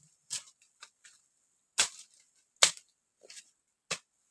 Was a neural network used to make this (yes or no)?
no